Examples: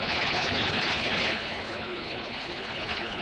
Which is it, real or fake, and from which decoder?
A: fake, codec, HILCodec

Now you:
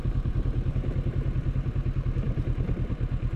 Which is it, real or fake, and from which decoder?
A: fake, vocoder, BigVGAN v2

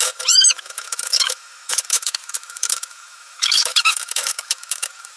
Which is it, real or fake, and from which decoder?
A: fake, autoencoder, DAC-VAE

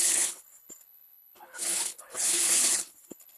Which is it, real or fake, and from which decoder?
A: fake, codec, HILCodec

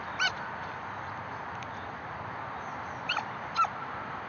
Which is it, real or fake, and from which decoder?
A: real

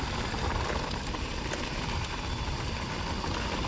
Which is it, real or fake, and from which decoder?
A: real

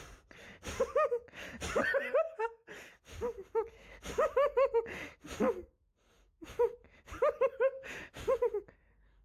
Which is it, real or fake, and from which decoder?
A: real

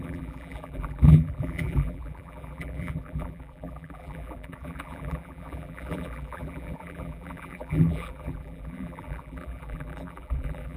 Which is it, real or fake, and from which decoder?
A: fake, vocoder, BigVGAN v2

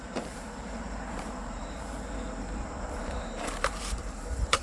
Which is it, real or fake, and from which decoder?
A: fake, vocoder, BigVGAN v2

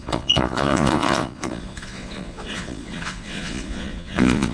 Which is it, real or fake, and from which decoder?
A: fake, vocoder, Vocos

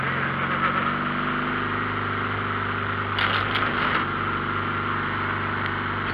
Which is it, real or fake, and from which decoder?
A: real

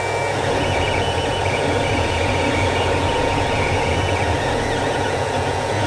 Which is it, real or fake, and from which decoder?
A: fake, vocoder, Vocos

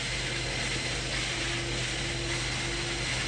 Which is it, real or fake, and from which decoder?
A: real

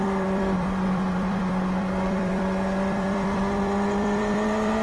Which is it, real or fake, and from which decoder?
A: fake, vocoder, BigVGAN v2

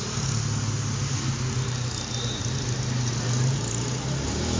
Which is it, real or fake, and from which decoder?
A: real